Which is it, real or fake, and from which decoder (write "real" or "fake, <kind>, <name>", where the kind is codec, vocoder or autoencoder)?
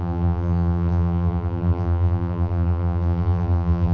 fake, vocoder, BigVGAN v2